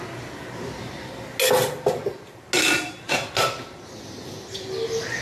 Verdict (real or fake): real